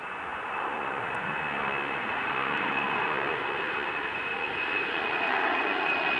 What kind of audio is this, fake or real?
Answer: fake